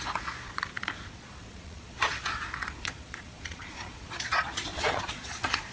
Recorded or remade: remade